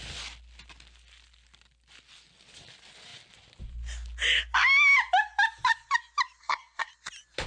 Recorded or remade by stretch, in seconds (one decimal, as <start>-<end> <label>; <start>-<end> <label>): 0.0-6.4 recorded; 6.4-6.9 remade; 6.9-7.5 recorded